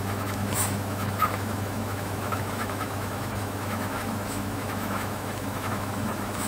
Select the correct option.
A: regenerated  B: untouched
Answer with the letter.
A